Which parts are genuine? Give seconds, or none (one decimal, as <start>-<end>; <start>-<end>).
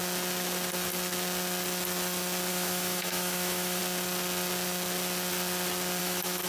0.0-2.5; 3.8-6.0